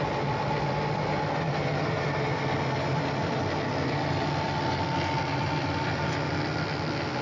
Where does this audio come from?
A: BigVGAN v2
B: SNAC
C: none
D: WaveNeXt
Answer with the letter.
C